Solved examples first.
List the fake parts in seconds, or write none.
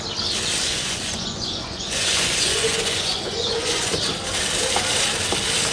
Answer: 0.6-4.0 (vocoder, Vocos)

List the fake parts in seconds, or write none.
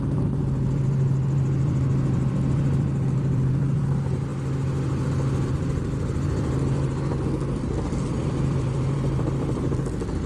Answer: 0.0-4.3 (vocoder, BigVGAN v2); 5.5-10.3